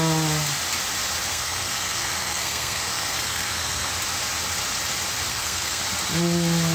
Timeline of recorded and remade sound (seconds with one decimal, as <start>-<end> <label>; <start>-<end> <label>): 0.0-1.3 recorded; 1.3-3.9 remade; 3.9-5.3 recorded; 5.3-5.8 remade; 5.8-6.7 recorded